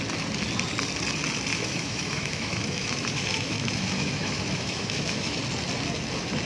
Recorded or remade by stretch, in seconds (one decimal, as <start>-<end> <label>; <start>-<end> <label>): 0.0-1.5 recorded; 1.5-5.4 remade; 5.4-6.5 recorded